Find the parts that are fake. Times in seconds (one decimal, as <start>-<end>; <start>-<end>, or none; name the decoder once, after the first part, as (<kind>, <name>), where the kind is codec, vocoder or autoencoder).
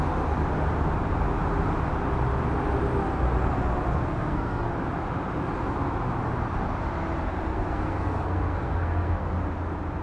4.0-4.7 (codec, SNAC); 7.5-9.3